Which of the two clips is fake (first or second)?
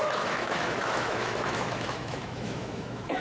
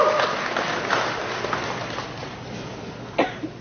first